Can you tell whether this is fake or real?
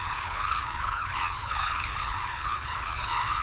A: fake